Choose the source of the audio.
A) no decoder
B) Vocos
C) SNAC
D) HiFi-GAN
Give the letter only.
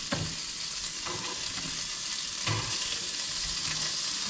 A